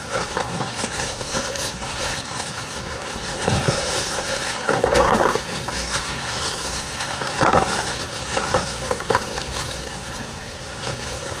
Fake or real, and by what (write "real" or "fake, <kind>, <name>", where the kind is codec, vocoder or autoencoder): fake, codec, SNAC